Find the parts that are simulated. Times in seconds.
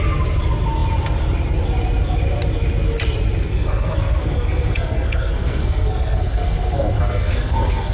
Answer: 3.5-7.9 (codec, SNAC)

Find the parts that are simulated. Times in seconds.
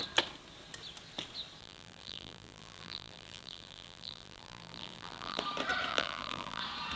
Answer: 1.6-5.4 (vocoder, BigVGAN v2); 5.9-6.6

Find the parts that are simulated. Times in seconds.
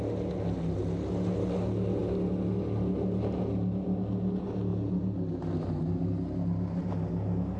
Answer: none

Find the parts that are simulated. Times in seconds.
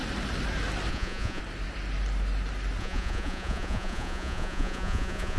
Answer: 0.9-1.4 (vocoder, Vocos); 2.8-5.4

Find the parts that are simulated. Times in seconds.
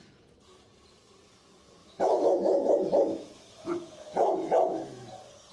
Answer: 1.8-5.1 (autoencoder, DAC-VAE)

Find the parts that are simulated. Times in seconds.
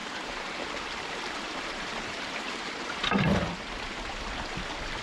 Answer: 0.0-3.0 (vocoder, BigVGAN v2)